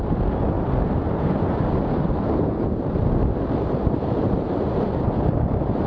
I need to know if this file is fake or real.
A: real